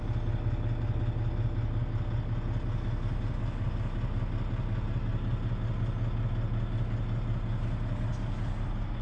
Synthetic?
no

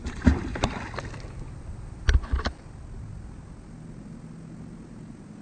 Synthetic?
no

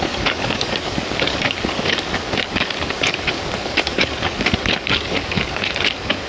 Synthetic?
yes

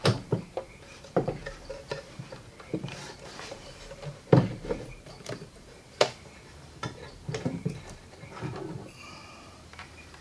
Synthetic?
yes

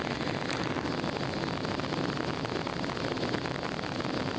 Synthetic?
no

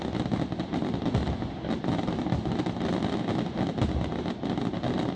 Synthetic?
no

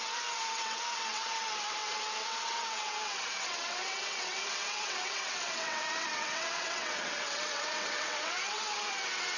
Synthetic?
yes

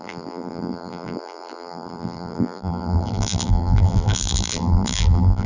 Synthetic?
yes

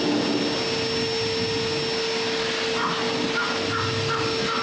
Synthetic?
no